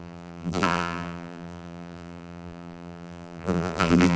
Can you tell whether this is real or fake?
fake